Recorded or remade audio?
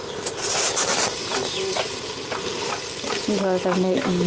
recorded